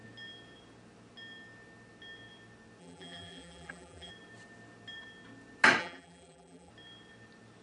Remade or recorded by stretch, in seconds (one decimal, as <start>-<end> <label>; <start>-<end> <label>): 0.0-2.8 recorded; 2.8-4.1 remade; 4.1-5.8 recorded; 5.8-6.7 remade; 6.7-7.6 recorded